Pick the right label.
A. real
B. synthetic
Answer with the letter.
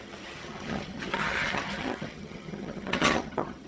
B